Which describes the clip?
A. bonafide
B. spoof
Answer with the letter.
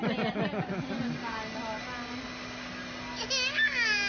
A